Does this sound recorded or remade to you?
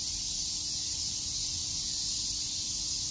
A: recorded